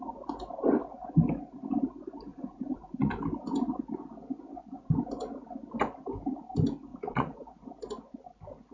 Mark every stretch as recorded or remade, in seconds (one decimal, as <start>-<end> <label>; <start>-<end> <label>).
0.0-2.3 recorded; 2.3-3.1 remade; 3.1-6.9 recorded; 6.9-7.6 remade; 7.6-8.7 recorded